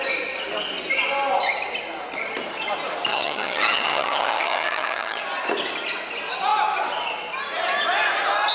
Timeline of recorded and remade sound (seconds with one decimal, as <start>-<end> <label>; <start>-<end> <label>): 0.0-3.1 recorded; 3.1-5.2 remade; 5.2-8.5 recorded